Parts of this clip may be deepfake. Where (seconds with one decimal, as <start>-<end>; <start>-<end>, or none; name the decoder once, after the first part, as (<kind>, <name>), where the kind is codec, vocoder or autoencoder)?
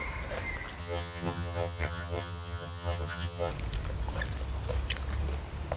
0.8-3.5 (vocoder, HiFi-GAN)